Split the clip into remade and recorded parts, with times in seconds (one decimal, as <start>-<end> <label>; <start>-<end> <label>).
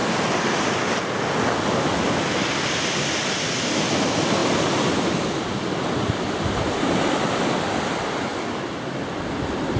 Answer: 0.0-9.8 recorded